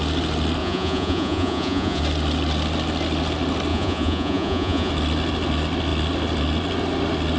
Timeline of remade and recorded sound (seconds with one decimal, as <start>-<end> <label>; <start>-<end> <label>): 0.0-0.6 recorded; 0.6-2.0 remade; 2.0-3.7 recorded; 3.7-4.9 remade; 4.9-7.4 recorded